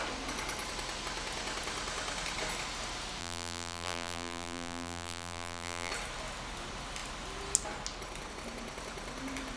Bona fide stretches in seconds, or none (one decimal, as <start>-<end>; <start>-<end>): 0.0-3.2; 5.9-9.6